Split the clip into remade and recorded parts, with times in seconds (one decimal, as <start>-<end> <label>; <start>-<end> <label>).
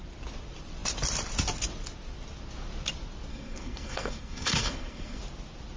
0.0-3.3 recorded; 3.3-5.2 remade; 5.2-5.8 recorded